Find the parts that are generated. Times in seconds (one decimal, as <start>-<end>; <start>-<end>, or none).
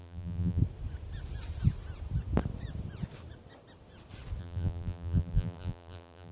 0.0-0.6; 4.4-6.3